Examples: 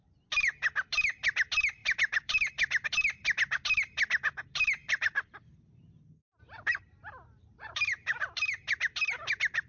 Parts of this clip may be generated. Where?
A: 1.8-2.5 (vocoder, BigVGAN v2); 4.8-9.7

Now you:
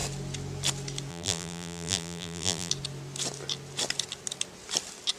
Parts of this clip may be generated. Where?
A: 1.1-2.7 (vocoder, BigVGAN v2)

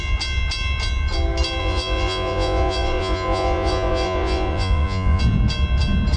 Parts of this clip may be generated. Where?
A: 1.6-5.2 (vocoder, Vocos)

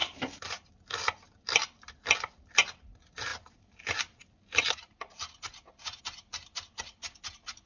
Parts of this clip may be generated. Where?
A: none

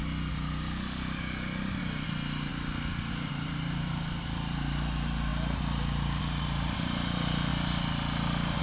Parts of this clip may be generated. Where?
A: 1.8-2.5 (vocoder, BigVGAN v2); 3.1-7.5

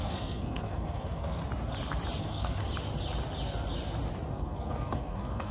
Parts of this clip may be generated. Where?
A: 0.0-1.4 (codec, SNAC); 2.2-2.6; 4.3-5.5